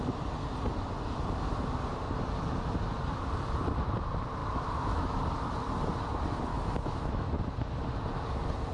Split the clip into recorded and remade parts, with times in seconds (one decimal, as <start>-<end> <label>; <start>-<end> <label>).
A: 0.0-4.4 recorded; 4.4-5.2 remade; 5.2-6.5 recorded; 6.5-7.3 remade; 7.3-8.7 recorded